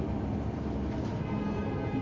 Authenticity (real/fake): real